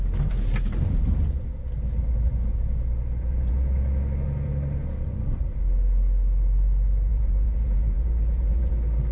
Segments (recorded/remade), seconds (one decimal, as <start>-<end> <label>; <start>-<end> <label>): 0.0-2.5 recorded; 2.5-3.5 remade; 3.5-7.1 recorded; 7.1-8.7 remade; 8.7-9.1 recorded